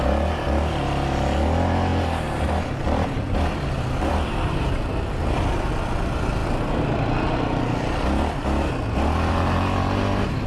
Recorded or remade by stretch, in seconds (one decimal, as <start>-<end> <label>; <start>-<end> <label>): 0.0-1.9 recorded; 1.9-5.5 remade; 5.5-10.5 recorded